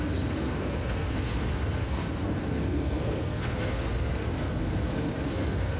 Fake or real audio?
fake